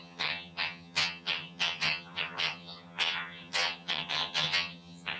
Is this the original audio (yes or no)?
no